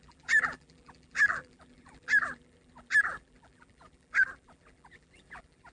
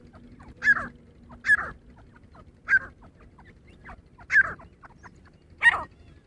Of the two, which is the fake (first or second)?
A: first